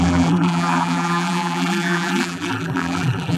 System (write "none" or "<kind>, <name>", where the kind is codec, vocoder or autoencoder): vocoder, BigVGAN v2